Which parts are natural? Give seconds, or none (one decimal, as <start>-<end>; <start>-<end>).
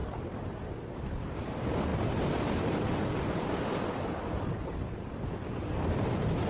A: 0.0-1.0